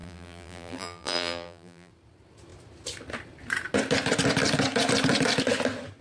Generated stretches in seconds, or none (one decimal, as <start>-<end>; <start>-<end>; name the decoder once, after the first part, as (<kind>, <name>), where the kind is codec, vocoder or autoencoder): 0.0-1.9 (vocoder, BigVGAN v2)